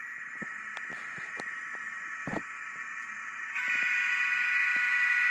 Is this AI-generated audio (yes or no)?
no